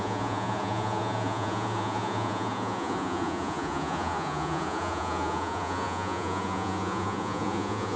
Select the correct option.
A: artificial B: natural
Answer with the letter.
A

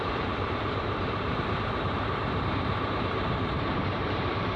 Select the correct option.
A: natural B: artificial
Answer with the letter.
B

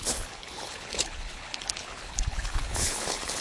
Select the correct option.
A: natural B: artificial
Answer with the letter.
B